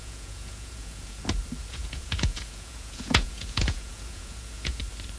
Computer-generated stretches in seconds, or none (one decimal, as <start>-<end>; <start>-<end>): 0.0-1.2; 1.7-4.8